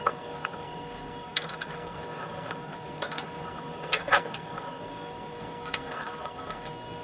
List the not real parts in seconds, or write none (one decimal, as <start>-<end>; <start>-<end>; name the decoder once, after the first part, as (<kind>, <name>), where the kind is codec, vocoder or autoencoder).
0.0-7.0 (codec, SNAC)